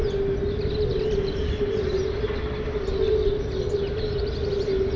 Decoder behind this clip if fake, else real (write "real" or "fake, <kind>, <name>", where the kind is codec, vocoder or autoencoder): real